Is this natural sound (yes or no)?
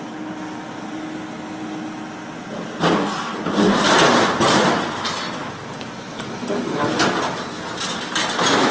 yes